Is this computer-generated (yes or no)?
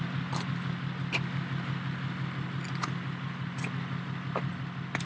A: no